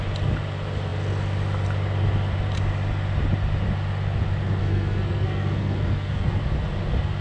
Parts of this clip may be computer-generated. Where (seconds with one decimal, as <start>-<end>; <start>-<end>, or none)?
4.6-6.4